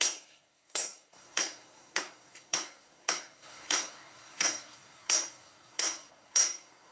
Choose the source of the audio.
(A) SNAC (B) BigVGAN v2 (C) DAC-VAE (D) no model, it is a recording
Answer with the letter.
A